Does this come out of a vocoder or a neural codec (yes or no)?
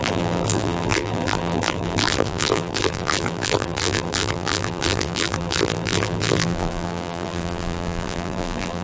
yes